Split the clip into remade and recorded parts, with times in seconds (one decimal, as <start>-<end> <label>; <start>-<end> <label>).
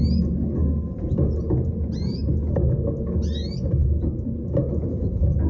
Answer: 0.0-5.5 recorded